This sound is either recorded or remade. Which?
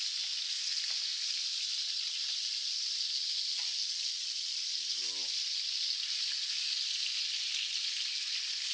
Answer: recorded